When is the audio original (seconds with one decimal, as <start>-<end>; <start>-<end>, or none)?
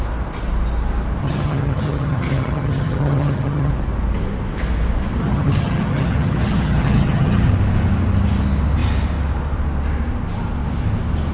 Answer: 0.0-1.2; 3.7-5.2; 7.5-11.3